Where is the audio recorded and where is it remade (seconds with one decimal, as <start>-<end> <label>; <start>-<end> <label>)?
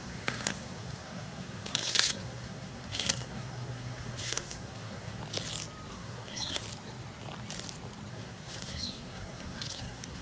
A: 0.0-5.2 remade; 5.2-5.9 recorded; 5.9-6.6 remade; 6.6-8.1 recorded; 8.1-10.2 remade